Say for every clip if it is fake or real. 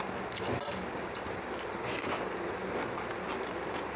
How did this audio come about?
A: real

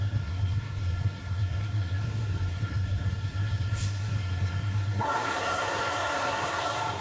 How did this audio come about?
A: fake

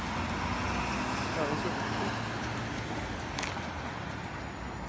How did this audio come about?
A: real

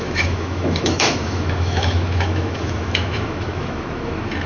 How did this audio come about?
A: fake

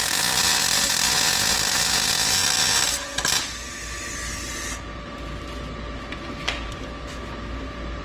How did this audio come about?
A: real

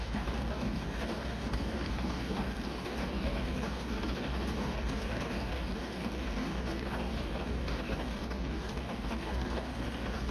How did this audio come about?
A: fake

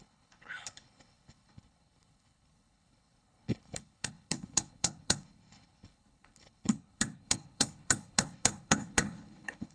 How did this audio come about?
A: fake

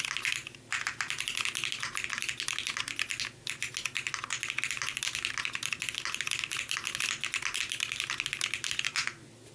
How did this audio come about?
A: real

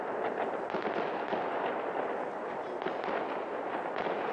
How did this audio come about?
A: real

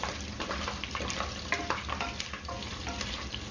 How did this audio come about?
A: real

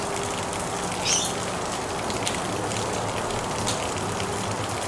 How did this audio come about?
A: real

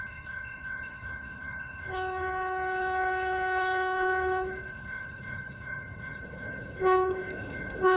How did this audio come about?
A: fake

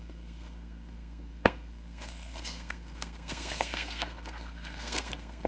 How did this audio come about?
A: fake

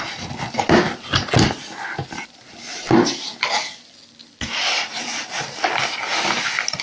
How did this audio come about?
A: real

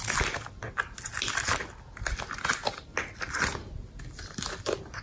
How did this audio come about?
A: real